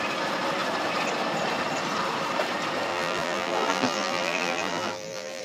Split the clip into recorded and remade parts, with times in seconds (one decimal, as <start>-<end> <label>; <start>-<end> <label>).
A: 0.0-2.9 recorded; 2.9-5.4 remade

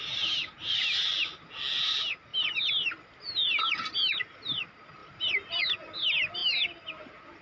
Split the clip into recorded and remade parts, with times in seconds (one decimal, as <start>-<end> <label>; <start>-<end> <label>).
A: 0.0-2.3 recorded; 2.3-3.6 remade; 3.6-5.0 recorded; 5.0-5.6 remade; 5.6-6.4 recorded; 6.4-7.4 remade

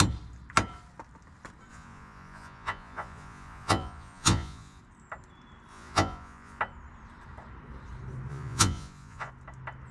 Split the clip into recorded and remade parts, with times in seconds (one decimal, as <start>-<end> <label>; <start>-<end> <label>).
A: 0.0-1.7 recorded; 1.7-4.8 remade; 4.8-5.7 recorded; 5.7-6.6 remade; 6.6-8.3 recorded; 8.3-9.3 remade; 9.3-9.9 recorded